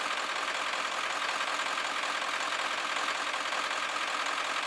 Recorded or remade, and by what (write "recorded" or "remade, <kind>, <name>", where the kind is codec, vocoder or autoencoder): recorded